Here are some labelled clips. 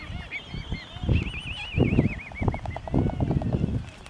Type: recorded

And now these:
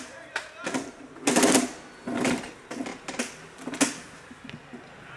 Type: recorded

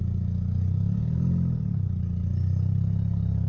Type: recorded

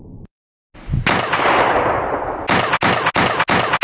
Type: recorded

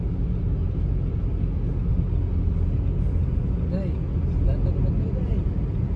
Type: recorded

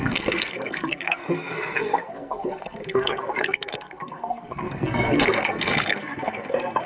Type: remade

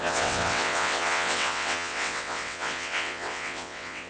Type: remade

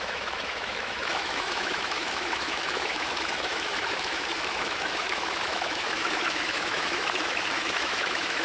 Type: remade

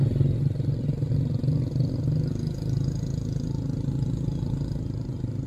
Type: recorded